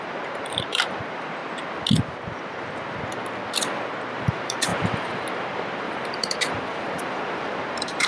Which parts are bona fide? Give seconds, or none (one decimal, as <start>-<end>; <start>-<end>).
1.4-4.1